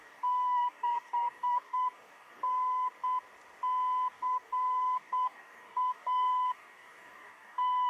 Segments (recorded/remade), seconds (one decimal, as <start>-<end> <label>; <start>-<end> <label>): 0.0-2.9 remade; 2.9-4.1 recorded; 4.1-7.9 remade